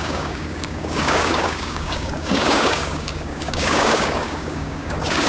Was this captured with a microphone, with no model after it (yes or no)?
no